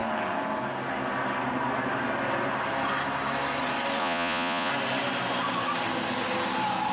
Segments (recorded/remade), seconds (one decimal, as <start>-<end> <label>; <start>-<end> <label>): 0.0-4.0 recorded; 4.0-4.7 remade; 4.7-6.9 recorded